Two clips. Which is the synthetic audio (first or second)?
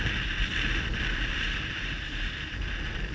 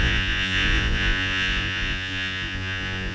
second